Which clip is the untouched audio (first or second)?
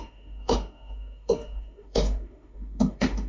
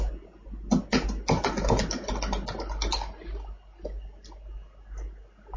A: second